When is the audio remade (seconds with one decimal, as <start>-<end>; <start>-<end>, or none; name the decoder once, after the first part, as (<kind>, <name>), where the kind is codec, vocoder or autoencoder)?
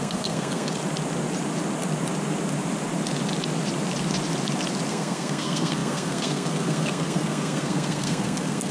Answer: 0.0-0.8 (codec, SNAC); 4.9-8.7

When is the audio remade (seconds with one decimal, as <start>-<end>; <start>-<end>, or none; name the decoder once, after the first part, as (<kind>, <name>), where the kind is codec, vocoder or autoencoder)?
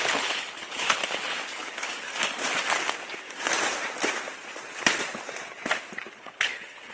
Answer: 0.0-1.0 (codec, HILCodec); 1.5-2.1; 6.2-6.9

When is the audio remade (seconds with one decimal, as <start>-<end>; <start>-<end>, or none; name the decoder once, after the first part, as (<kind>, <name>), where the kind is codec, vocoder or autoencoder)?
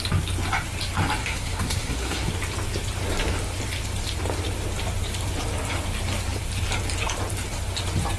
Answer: 1.2-2.3 (codec, SNAC)